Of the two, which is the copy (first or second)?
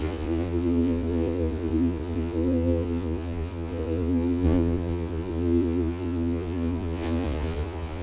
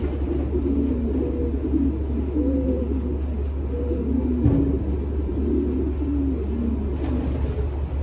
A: first